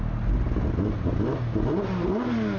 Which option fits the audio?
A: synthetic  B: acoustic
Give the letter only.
B